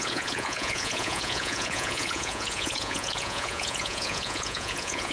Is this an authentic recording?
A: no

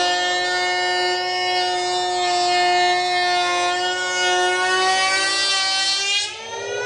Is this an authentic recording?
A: yes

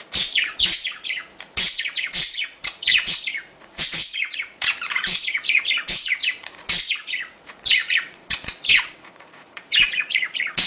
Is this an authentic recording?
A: no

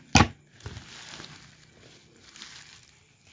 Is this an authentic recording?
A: yes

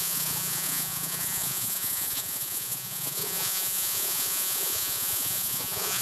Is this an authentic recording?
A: no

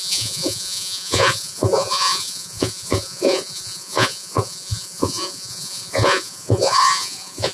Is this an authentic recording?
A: no